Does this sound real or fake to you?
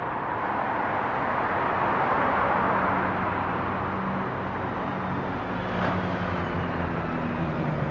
real